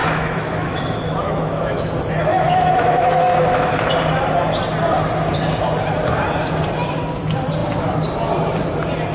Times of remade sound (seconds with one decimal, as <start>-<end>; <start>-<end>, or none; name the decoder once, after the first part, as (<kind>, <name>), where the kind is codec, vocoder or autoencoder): 0.0-1.9 (autoencoder, DAC-VAE); 2.3-3.7